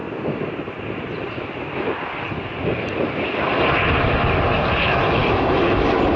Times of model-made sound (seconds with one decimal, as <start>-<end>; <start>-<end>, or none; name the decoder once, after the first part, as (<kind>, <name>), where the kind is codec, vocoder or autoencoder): 0.0-3.4 (vocoder, BigVGAN v2)